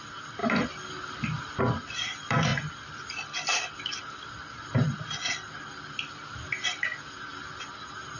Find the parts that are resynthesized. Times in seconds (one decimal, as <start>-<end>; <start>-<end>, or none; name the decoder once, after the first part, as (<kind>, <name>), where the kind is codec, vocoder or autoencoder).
0.0-0.4 (vocoder, BigVGAN v2); 1.6-8.2